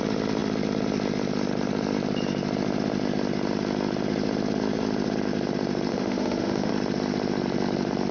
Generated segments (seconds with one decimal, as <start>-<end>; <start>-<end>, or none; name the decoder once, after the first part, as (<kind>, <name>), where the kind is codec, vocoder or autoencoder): 5.9-6.7 (autoencoder, DAC-VAE)